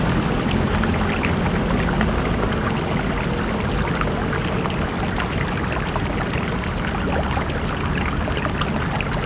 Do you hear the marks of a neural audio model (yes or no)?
no